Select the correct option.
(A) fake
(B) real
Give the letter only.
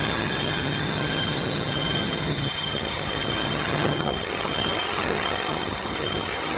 A